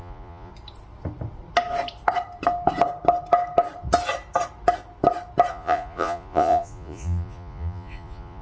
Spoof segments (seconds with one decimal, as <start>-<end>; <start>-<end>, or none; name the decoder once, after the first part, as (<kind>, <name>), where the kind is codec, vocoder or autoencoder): 0.0-0.5 (vocoder, Vocos); 5.5-8.4